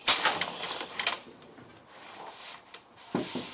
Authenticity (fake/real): real